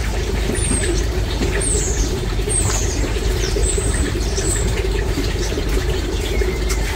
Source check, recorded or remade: remade